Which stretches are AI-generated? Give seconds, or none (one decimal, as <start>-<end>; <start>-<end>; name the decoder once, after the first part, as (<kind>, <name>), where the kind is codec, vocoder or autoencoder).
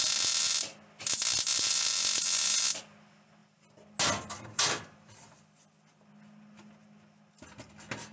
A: 1.5-2.8 (vocoder, BigVGAN v2)